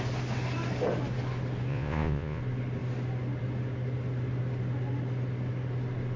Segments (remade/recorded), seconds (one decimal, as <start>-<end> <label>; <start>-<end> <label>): 0.0-1.7 recorded; 1.7-2.4 remade; 2.4-6.2 recorded

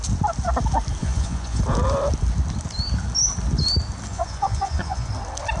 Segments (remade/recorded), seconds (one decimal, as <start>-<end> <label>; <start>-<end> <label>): 0.0-1.0 recorded; 1.0-1.6 remade; 1.6-4.1 recorded; 4.1-5.1 remade; 5.1-5.6 recorded

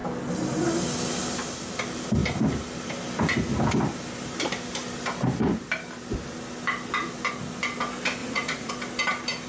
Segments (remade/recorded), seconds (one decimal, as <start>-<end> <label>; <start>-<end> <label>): 0.0-8.2 recorded; 8.2-8.7 remade; 8.7-9.5 recorded

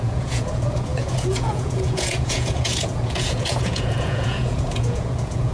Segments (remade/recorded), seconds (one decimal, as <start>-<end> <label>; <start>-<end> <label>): 0.0-5.5 remade

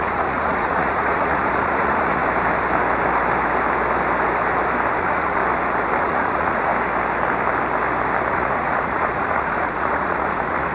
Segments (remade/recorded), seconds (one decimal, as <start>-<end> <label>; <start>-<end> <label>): 0.0-2.2 remade; 2.2-5.0 recorded; 5.0-5.4 remade; 5.4-6.0 recorded; 6.0-6.7 remade; 6.7-8.3 recorded; 8.3-10.7 remade

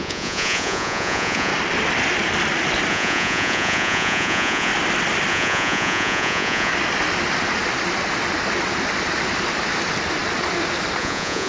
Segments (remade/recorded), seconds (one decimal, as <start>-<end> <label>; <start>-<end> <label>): 0.0-1.5 remade; 1.5-2.9 recorded; 2.9-4.7 remade; 4.7-5.3 recorded; 5.3-6.7 remade; 6.7-11.0 recorded; 11.0-11.5 remade